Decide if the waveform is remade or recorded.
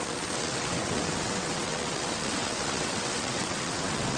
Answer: remade